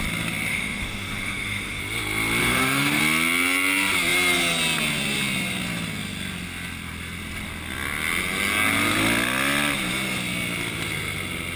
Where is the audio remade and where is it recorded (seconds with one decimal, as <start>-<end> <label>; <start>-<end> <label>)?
0.0-0.5 recorded; 0.5-1.8 remade; 1.8-2.4 recorded; 2.4-3.0 remade; 3.0-11.6 recorded